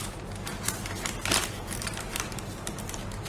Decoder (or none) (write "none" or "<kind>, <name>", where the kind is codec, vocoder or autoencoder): vocoder, BigVGAN v2